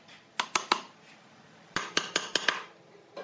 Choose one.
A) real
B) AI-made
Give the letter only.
A